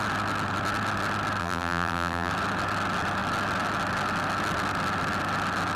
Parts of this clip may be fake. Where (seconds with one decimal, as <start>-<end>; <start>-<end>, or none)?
1.4-2.3